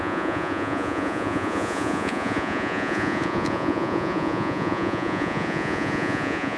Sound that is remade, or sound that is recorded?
remade